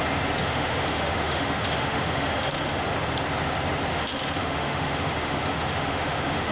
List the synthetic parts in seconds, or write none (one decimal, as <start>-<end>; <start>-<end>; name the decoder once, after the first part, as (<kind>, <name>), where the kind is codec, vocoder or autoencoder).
0.4-2.9 (autoencoder, DAC-VAE); 3.9-6.5